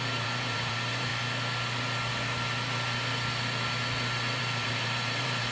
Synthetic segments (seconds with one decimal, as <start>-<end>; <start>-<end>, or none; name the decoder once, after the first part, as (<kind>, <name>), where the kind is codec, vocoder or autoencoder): 0.0-1.1 (vocoder, BigVGAN v2); 4.4-5.5